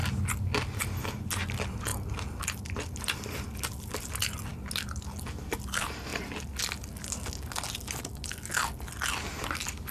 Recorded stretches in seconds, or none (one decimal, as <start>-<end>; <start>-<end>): 0.0-9.9